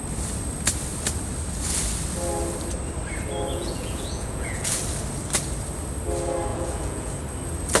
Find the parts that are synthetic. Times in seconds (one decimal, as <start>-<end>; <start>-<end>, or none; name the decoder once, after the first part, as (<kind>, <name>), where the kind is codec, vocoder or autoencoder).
3.5-4.8 (vocoder, Vocos); 6.5-7.1